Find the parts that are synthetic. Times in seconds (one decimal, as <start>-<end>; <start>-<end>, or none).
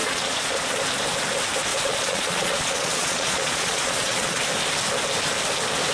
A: 0.0-0.8; 1.7-4.4